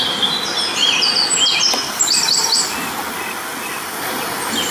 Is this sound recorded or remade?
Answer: recorded